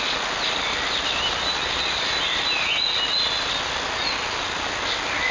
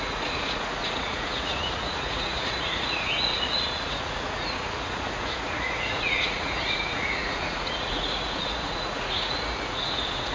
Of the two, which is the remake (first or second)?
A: second